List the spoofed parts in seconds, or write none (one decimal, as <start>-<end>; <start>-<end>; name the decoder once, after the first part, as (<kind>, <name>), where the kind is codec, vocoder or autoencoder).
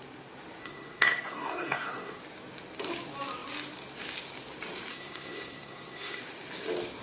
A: 0.6-2.2 (codec, SNAC); 4.9-6.2